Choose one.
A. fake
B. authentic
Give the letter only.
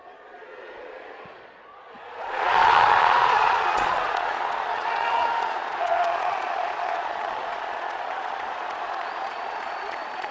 A